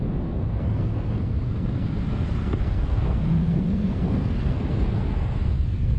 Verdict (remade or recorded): remade